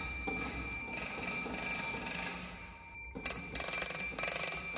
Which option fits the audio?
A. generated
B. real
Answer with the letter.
B